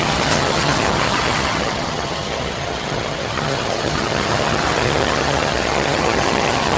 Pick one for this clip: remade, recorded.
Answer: remade